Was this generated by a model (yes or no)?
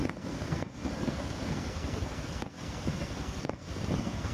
yes